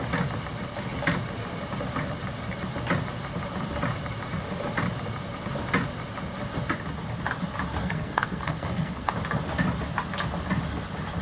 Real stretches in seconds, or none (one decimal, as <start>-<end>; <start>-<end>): 0.0-7.8; 9.1-11.2